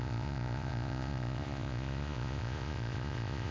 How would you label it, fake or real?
fake